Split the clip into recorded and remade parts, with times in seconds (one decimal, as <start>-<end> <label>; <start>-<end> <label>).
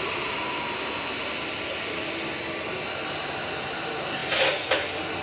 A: 0.0-5.2 recorded